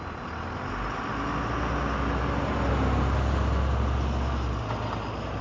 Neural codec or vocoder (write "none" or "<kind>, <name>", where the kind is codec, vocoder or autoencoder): none